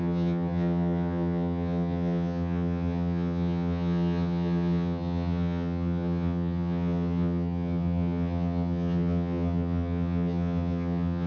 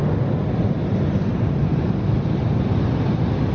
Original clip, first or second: second